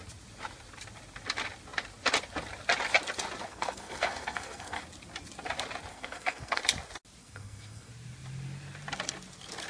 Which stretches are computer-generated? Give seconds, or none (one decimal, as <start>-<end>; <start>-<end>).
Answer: 3.4-4.8; 5.9-6.6; 7.2-7.9